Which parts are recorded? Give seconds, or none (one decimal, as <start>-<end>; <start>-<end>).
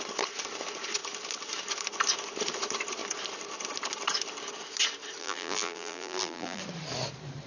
0.0-5.2; 6.6-7.5